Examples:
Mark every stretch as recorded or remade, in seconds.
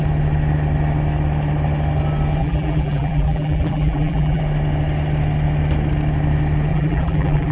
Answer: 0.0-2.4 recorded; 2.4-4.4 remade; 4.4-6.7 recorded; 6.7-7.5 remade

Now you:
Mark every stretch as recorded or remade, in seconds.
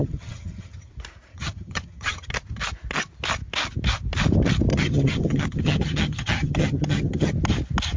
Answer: 0.0-0.9 remade; 0.9-1.3 recorded; 1.3-2.3 remade; 2.3-4.7 recorded; 4.7-7.3 remade; 7.3-8.0 recorded